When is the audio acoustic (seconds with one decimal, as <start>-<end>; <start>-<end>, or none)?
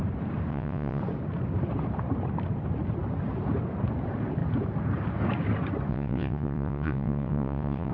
0.0-0.5; 1.0-5.9